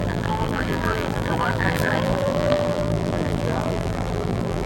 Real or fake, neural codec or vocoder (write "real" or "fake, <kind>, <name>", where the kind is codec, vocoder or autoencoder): fake, vocoder, BigVGAN v2